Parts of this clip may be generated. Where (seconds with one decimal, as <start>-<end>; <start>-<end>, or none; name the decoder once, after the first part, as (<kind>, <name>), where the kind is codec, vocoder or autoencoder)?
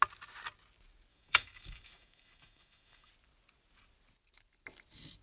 1.1-3.1 (autoencoder, DAC-VAE)